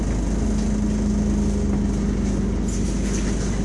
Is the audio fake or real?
real